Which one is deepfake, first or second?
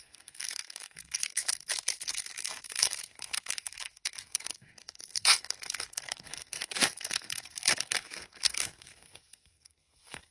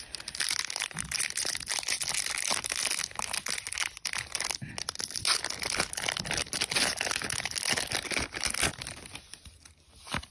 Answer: first